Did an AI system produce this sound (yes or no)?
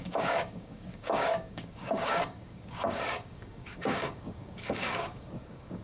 yes